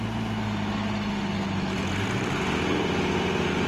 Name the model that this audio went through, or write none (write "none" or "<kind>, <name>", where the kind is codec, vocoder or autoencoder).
none